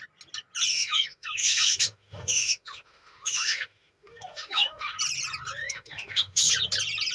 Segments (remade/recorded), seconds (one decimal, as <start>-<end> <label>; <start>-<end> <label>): 0.0-0.7 recorded; 0.7-5.0 remade; 5.0-5.6 recorded; 5.6-6.5 remade; 6.5-7.1 recorded